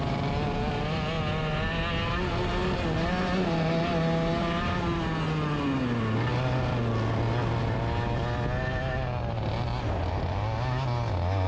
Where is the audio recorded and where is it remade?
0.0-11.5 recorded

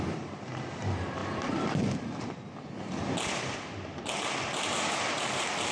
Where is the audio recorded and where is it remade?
0.0-5.7 recorded

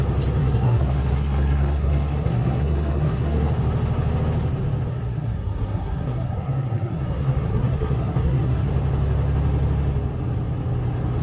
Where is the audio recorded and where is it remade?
0.0-0.4 recorded; 0.4-3.5 remade; 3.5-4.9 recorded; 4.9-8.7 remade; 8.7-11.2 recorded

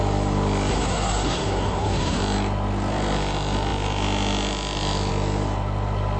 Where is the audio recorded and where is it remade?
0.0-0.7 recorded; 0.7-2.2 remade; 2.2-6.2 recorded

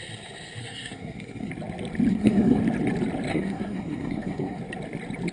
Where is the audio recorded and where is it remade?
0.0-0.6 recorded; 0.6-1.5 remade; 1.5-2.1 recorded; 2.1-2.6 remade; 2.6-3.3 recorded; 3.3-4.6 remade; 4.6-5.3 recorded